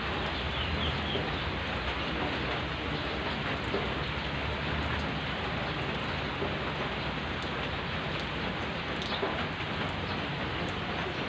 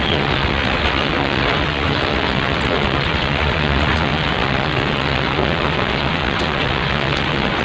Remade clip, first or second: second